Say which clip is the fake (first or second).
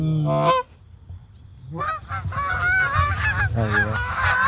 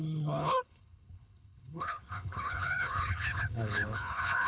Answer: second